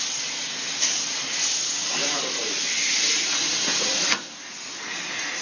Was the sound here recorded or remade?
recorded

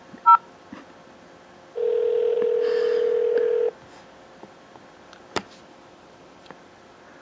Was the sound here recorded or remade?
recorded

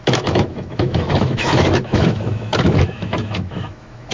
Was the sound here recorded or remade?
remade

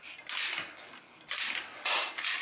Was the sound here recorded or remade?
remade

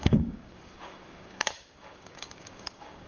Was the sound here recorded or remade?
remade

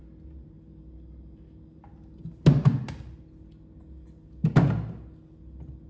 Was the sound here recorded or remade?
recorded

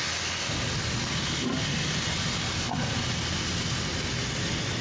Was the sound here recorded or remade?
recorded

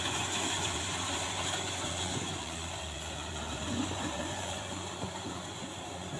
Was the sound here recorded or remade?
remade